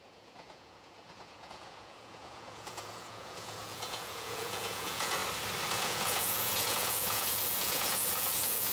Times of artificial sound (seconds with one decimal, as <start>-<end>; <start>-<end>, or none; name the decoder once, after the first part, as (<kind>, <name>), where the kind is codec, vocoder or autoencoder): 0.0-5.2 (vocoder, Vocos); 5.7-8.7